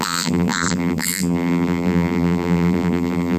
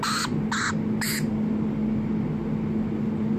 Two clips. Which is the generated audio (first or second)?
first